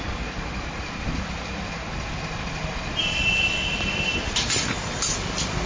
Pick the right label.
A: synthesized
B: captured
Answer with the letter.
B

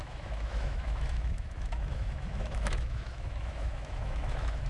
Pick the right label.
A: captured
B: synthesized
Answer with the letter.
B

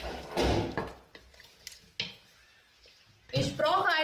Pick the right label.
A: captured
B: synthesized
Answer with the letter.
A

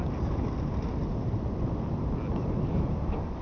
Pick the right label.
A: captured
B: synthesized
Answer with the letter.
A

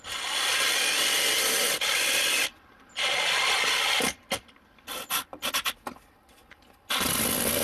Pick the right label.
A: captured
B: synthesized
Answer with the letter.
A